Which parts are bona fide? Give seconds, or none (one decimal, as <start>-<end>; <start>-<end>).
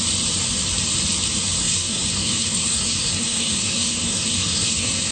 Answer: 0.0-1.6